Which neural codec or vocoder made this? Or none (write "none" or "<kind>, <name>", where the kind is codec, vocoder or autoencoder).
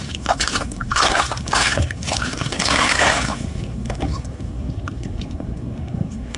codec, SNAC